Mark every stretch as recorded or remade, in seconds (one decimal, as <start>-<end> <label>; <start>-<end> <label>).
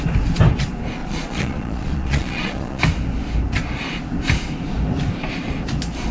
0.0-1.0 recorded; 1.0-2.8 remade; 2.8-6.1 recorded